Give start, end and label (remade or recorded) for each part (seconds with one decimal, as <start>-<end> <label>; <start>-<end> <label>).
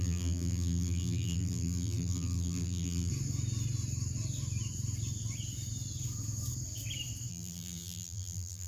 0.0-3.1 remade; 3.1-7.3 recorded; 7.3-8.7 remade